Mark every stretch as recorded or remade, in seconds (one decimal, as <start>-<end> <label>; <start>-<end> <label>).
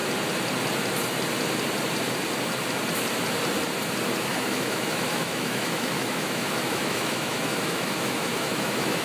0.0-4.3 recorded; 4.3-9.0 remade